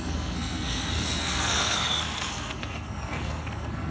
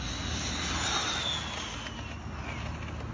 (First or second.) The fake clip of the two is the first